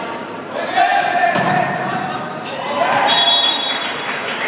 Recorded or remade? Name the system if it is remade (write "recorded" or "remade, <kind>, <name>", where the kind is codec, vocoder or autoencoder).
remade, vocoder, BigVGAN v2